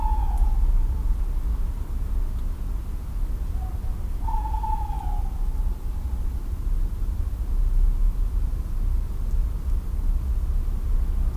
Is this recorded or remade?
recorded